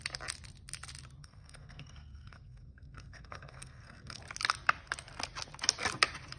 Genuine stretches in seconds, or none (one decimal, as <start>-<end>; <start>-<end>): 0.0-1.2; 4.2-6.4